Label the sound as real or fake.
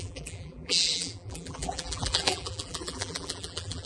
fake